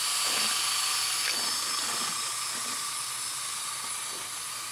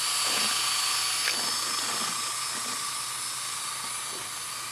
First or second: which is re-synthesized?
first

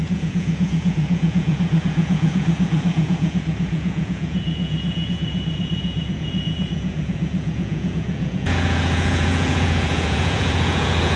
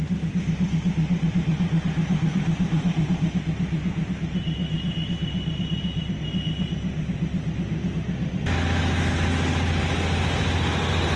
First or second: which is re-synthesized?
first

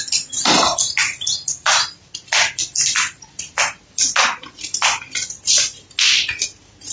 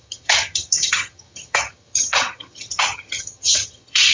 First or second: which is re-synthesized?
second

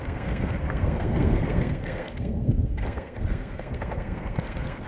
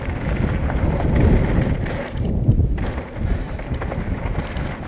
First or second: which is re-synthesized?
first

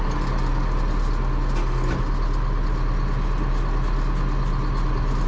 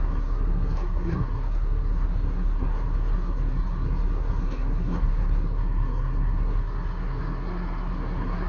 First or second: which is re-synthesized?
second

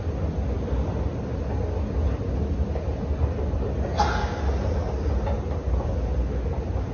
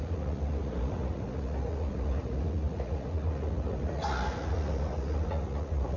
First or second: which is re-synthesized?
second